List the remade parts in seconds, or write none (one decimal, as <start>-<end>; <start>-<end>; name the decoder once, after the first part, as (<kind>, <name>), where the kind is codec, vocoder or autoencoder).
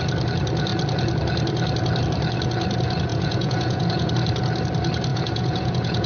3.1-4.1 (vocoder, Vocos); 5.1-6.1